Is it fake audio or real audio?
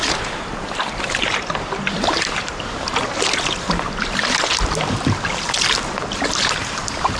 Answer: real